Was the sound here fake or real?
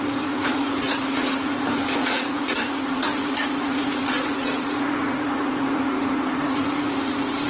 fake